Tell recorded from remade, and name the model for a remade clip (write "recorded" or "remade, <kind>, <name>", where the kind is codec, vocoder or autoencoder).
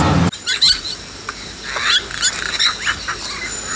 recorded